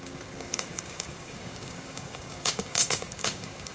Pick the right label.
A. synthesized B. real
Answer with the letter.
A